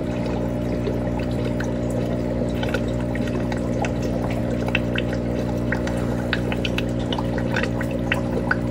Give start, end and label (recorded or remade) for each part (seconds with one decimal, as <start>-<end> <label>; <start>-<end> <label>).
0.0-4.4 remade; 4.4-6.8 recorded; 6.8-8.7 remade